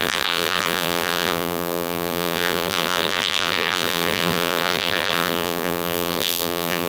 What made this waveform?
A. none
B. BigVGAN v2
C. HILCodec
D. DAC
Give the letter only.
B